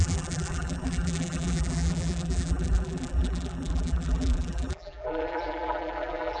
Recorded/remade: remade